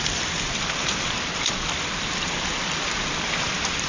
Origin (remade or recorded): remade